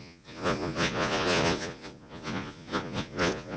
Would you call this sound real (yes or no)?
no